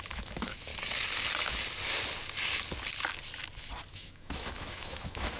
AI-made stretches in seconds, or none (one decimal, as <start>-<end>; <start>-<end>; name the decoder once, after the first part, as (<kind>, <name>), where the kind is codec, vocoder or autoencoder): 0.0-0.7 (autoencoder, DAC-VAE); 3.9-5.4